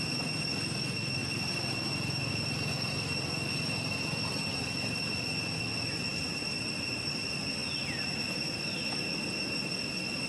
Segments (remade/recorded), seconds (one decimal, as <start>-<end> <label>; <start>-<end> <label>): 0.0-10.3 recorded

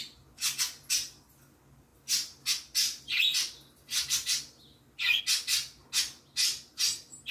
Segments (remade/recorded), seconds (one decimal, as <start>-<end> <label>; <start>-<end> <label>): 0.0-7.3 recorded